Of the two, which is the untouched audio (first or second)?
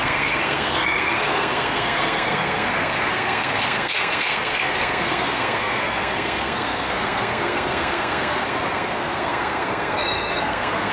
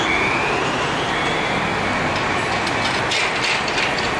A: second